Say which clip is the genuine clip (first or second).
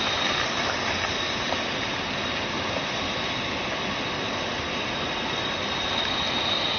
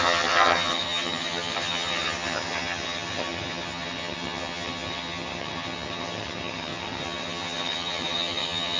first